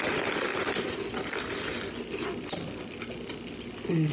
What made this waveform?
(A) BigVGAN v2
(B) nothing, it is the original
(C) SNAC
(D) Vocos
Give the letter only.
B